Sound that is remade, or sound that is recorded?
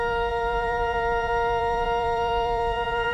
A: remade